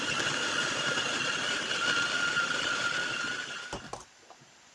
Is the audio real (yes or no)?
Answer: yes